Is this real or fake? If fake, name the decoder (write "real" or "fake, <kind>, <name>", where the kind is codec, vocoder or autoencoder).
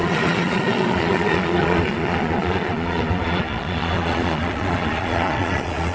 fake, vocoder, Vocos